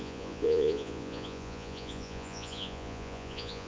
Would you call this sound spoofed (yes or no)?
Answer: yes